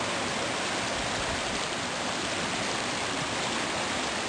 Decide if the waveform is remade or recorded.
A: recorded